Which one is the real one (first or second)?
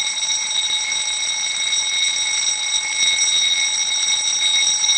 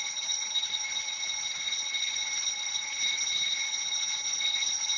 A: first